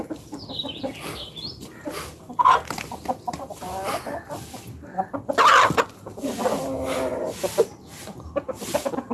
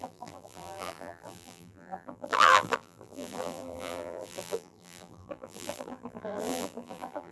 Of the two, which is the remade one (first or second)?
second